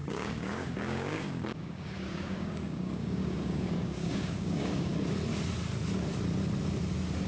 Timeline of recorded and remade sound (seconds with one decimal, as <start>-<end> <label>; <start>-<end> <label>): 0.0-4.9 remade; 4.9-7.3 recorded